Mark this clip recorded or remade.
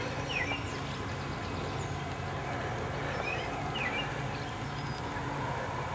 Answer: recorded